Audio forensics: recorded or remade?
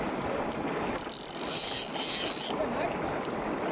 remade